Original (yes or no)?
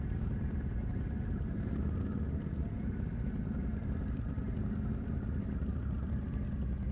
yes